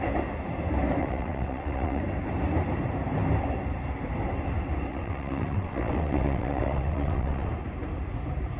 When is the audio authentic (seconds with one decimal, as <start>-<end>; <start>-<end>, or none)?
0.0-1.0; 2.0-4.9; 7.5-8.6